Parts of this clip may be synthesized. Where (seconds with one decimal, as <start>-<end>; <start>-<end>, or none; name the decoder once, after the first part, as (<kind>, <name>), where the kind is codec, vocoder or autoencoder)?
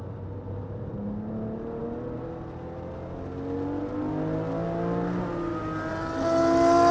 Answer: none